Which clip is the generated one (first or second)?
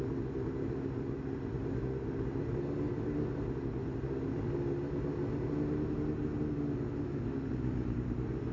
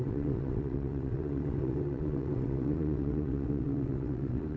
second